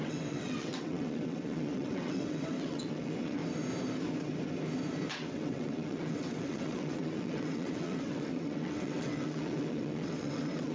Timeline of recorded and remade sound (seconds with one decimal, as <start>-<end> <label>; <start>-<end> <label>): 0.0-3.4 remade; 3.4-5.1 recorded; 5.1-10.7 remade